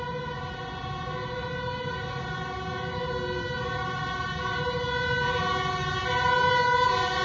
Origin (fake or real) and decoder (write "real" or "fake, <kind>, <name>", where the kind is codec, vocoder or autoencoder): real